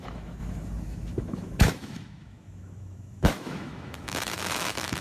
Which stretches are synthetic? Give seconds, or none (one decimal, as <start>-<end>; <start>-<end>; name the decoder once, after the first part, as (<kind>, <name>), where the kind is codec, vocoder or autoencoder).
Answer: 0.0-5.0 (autoencoder, DAC-VAE)